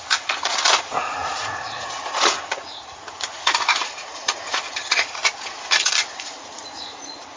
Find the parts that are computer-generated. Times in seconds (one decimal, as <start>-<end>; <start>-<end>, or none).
0.0-5.2; 5.8-7.4